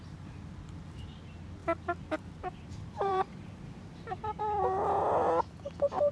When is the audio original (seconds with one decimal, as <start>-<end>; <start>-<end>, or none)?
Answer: 0.0-1.6; 4.4-6.1